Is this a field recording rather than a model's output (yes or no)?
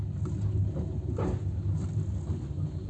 yes